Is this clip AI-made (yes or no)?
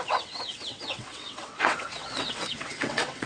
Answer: yes